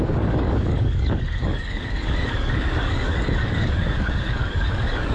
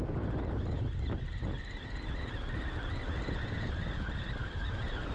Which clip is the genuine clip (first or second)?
second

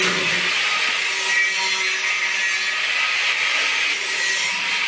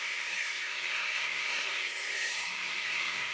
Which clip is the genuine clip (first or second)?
first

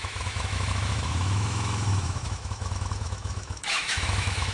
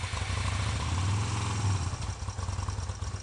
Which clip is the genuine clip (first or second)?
second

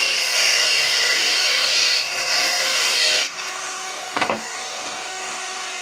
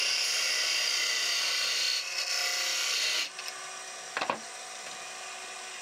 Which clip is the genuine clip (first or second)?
second